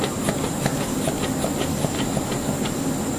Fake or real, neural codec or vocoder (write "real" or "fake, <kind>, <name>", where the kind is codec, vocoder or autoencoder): real